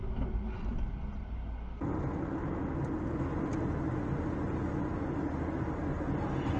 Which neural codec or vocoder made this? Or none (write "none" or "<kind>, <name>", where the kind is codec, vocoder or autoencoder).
none